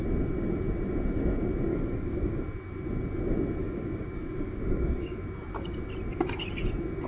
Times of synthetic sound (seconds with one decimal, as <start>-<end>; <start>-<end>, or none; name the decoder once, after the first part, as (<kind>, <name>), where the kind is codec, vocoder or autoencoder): 1.7-2.4 (codec, DAC); 3.6-5.2

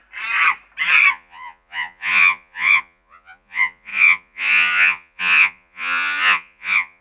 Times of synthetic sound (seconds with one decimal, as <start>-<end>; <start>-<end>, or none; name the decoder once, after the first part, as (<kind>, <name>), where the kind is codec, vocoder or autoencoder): 1.1-7.0 (vocoder, Vocos)

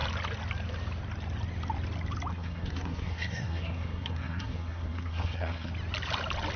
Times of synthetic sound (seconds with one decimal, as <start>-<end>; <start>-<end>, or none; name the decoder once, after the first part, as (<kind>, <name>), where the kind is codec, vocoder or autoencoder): 2.3-5.7 (codec, SNAC)

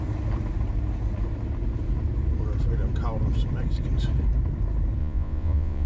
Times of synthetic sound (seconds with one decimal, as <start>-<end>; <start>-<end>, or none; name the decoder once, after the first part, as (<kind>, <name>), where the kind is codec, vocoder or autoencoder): 5.0-5.9 (vocoder, Vocos)

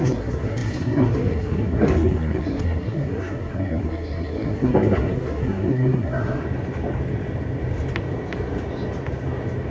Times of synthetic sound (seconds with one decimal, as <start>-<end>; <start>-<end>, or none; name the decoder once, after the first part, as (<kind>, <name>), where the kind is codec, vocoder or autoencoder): 0.0-6.4 (codec, SNAC)

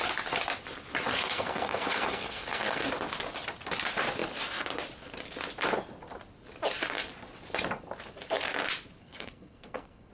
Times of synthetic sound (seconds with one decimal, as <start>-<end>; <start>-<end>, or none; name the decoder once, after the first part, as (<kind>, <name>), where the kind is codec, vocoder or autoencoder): 1.1-2.9 (codec, SNAC); 9.0-10.1

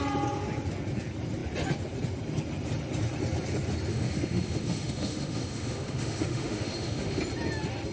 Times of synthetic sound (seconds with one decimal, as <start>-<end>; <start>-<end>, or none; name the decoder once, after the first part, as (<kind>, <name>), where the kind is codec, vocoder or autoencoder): 3.9-7.2 (autoencoder, DAC-VAE)

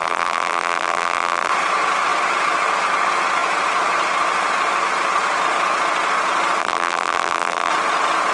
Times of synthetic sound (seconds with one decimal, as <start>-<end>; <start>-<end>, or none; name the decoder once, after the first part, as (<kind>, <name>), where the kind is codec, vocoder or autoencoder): 0.0-1.5 (vocoder, BigVGAN v2); 6.6-7.7